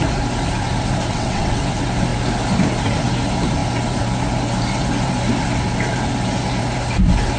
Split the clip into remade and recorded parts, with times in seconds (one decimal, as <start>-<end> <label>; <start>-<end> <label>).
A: 0.0-1.1 recorded; 1.1-1.6 remade; 1.6-7.4 recorded